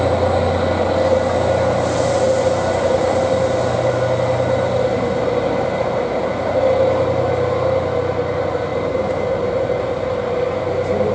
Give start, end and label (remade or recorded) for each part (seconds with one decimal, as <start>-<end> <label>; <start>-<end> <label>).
0.0-11.1 recorded